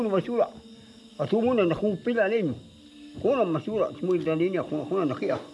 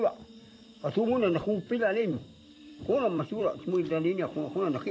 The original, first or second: first